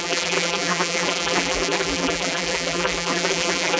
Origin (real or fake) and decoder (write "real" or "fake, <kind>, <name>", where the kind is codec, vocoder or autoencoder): fake, vocoder, BigVGAN v2